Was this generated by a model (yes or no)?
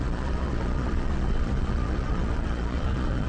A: yes